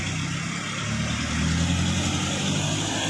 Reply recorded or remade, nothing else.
recorded